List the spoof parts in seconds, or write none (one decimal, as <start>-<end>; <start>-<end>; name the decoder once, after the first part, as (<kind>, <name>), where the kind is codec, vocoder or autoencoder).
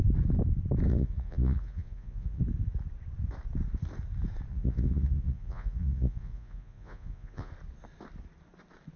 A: 0.9-2.4 (vocoder, Vocos); 4.5-7.5